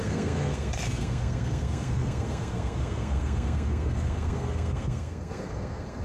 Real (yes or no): no